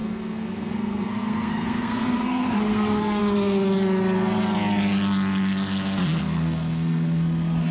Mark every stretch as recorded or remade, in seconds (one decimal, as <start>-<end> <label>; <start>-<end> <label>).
0.0-3.2 remade; 3.2-6.2 recorded; 6.2-7.7 remade